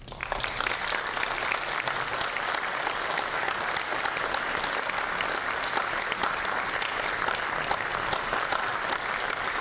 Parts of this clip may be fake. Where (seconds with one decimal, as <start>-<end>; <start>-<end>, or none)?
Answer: none